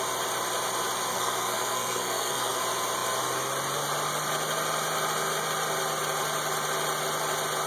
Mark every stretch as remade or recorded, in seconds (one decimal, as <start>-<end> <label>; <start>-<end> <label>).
0.0-1.1 recorded; 1.1-2.6 remade; 2.6-7.7 recorded